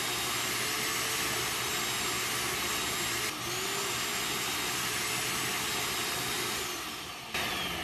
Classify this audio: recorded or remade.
recorded